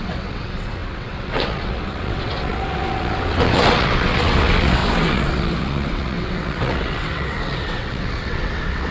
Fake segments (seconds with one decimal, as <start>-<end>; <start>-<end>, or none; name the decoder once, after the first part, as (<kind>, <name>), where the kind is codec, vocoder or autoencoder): 0.0-8.9 (vocoder, WaveNeXt)